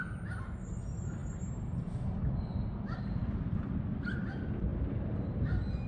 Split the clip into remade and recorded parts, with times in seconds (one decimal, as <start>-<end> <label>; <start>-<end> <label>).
0.0-5.9 recorded